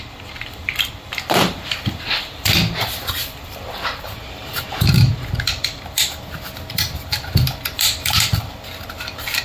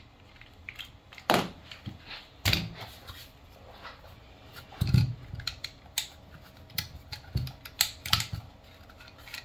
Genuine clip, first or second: second